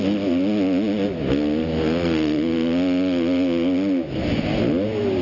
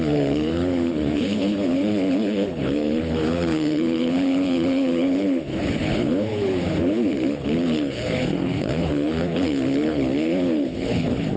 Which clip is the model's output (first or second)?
second